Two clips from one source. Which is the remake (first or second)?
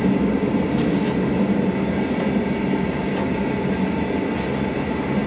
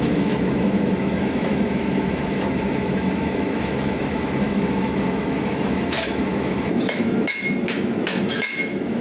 second